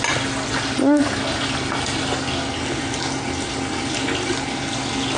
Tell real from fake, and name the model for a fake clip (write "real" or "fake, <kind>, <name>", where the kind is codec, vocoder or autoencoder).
real